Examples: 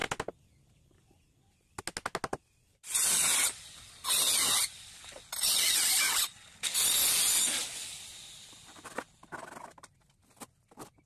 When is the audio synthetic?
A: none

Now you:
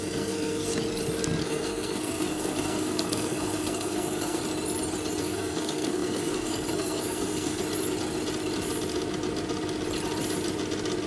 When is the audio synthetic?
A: 0.0-0.7 (codec, SNAC); 1.4-4.4; 5.2-7.6

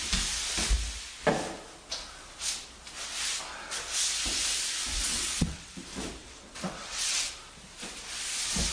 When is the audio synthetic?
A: 5.1-5.7 (vocoder, WaveNeXt); 6.2-7.3

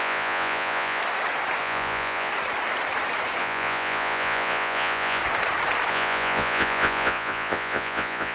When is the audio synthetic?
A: 0.0-1.0 (vocoder, Vocos); 1.6-2.3; 3.4-5.2; 5.9-8.3

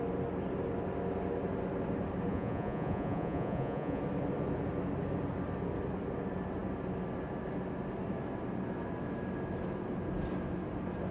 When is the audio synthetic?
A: 2.3-4.0 (vocoder, Vocos)

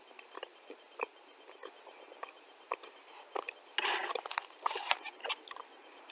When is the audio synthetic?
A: 4.0-5.6 (vocoder, BigVGAN v2)

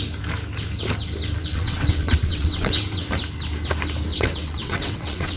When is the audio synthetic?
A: 1.4-3.1 (vocoder, WaveNeXt); 4.1-5.4